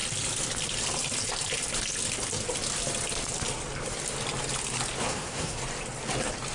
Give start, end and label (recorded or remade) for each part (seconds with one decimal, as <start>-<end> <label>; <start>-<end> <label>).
0.0-5.0 recorded; 5.0-5.6 remade; 5.6-6.5 recorded